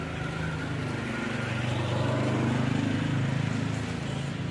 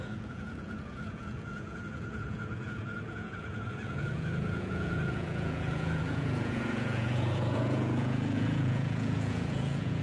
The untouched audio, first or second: first